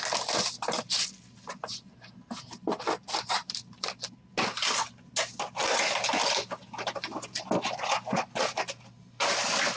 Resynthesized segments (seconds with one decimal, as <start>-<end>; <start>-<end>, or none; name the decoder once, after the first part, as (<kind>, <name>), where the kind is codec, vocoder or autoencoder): none